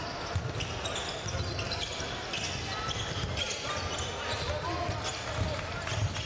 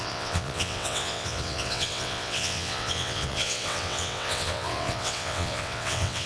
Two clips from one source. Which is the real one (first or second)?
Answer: first